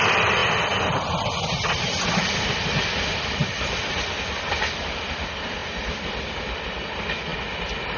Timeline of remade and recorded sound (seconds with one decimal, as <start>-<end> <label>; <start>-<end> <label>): 0.0-8.0 recorded